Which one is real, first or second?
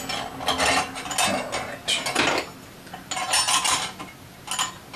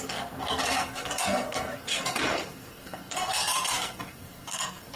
first